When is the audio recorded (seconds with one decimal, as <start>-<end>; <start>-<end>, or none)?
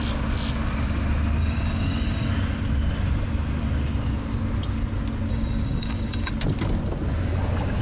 0.0-1.4; 2.3-5.3; 6.3-7.8